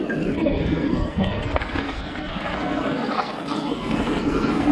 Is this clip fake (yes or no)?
yes